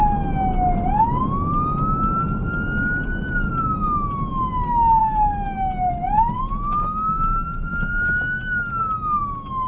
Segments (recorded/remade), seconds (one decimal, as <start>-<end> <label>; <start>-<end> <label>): 0.0-9.7 recorded